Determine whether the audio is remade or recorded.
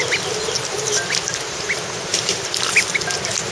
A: recorded